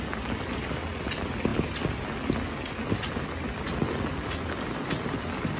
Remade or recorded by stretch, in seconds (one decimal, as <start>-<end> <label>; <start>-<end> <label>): 0.0-5.6 recorded

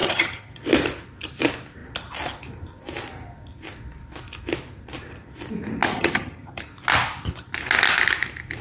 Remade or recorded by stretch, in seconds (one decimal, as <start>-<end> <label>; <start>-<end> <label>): 0.0-0.6 remade; 0.6-5.9 recorded; 5.9-6.6 remade; 6.6-8.6 recorded

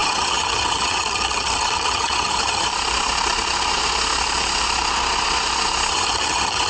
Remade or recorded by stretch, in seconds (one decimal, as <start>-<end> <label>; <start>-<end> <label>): 0.0-2.7 remade; 2.7-5.9 recorded; 5.9-6.7 remade

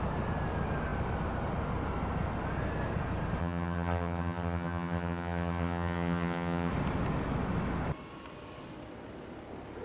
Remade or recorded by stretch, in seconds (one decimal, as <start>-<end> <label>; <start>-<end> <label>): 0.0-3.4 recorded; 3.4-6.7 remade; 6.7-9.8 recorded

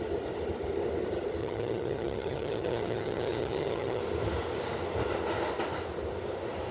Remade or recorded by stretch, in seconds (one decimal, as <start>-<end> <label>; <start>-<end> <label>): 0.0-1.4 recorded; 1.4-4.0 remade; 4.0-6.7 recorded

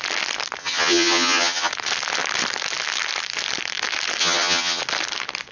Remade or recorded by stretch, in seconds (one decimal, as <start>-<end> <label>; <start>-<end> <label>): 0.0-0.6 recorded; 0.6-1.7 remade; 1.7-4.2 recorded; 4.2-4.8 remade; 4.8-5.5 recorded

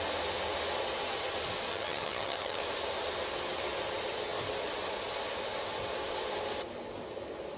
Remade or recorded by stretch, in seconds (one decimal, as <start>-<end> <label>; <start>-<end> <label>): 0.0-1.7 recorded; 1.7-2.6 remade; 2.6-7.6 recorded

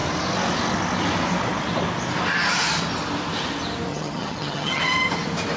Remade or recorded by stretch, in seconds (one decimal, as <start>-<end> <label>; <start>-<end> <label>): 0.0-3.9 recorded; 3.9-4.8 remade; 4.8-5.6 recorded